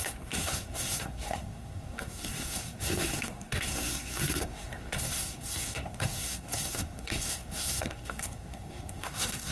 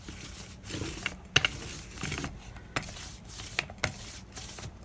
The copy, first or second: first